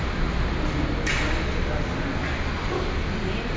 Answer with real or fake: real